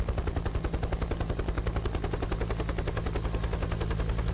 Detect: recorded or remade recorded